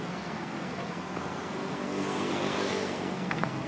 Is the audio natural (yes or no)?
no